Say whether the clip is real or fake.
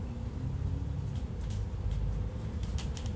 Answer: real